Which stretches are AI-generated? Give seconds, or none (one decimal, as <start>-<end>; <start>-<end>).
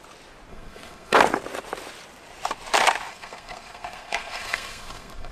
0.5-1.2; 3.1-5.3